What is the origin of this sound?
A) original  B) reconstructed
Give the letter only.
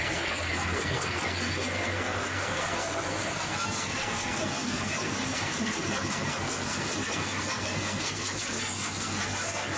B